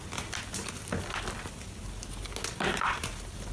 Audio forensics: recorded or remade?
recorded